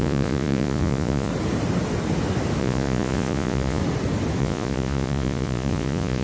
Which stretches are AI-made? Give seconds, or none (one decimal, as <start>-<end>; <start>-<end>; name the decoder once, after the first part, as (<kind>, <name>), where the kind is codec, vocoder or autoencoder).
0.0-1.3 (vocoder, Vocos); 2.6-3.8; 4.4-6.2